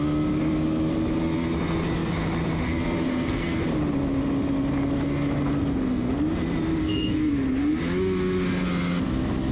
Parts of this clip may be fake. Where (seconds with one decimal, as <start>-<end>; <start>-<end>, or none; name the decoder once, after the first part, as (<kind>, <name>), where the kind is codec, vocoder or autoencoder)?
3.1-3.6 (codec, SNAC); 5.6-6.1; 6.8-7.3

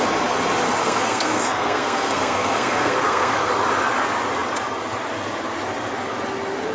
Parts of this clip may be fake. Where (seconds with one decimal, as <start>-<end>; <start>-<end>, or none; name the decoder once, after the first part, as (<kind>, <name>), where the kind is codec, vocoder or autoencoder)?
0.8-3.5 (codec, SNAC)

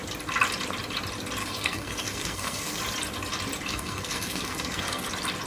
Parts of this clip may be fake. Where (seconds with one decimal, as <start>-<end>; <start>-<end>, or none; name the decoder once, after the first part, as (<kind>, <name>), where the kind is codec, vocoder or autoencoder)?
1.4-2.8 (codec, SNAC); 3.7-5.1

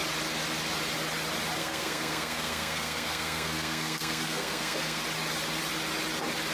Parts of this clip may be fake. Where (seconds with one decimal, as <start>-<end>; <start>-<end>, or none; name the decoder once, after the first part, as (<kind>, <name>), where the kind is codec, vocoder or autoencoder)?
1.6-5.0 (codec, SNAC)